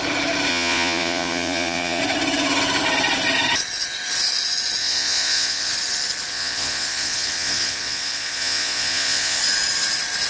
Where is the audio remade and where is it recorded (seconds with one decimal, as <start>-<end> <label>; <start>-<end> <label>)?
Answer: 0.0-0.5 recorded; 0.5-2.0 remade; 2.0-4.8 recorded; 4.8-5.7 remade; 5.7-6.3 recorded; 6.3-9.4 remade; 9.4-10.3 recorded